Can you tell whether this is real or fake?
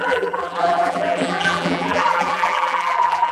fake